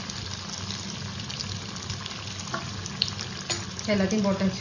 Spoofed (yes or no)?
no